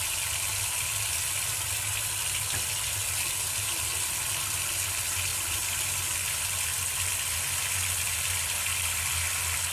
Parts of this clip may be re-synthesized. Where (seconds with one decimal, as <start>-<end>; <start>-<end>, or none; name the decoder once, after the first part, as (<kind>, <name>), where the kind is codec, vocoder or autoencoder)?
5.3-5.8 (vocoder, BigVGAN v2)